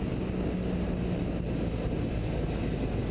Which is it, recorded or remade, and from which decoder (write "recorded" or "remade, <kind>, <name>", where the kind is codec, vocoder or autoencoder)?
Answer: recorded